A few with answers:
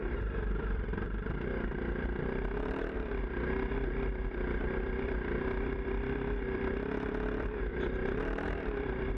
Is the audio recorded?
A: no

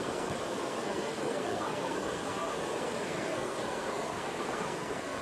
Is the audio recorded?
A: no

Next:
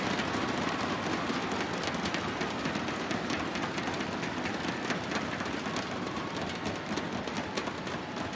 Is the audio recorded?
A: yes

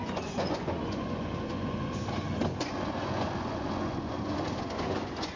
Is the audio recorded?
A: no